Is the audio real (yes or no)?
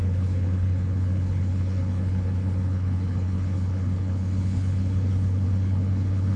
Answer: no